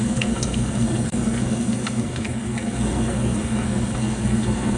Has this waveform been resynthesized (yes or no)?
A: yes